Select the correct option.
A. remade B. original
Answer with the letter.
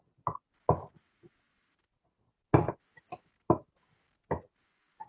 B